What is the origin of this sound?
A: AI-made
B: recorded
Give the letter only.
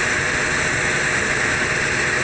B